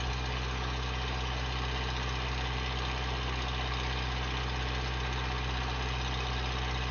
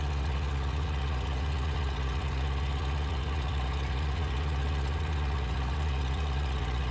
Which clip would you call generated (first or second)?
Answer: second